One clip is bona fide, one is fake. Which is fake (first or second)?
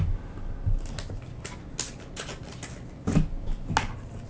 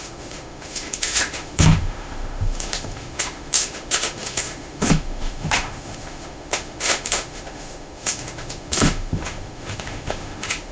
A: second